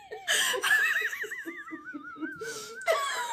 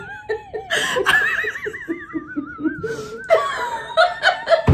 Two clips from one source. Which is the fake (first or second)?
first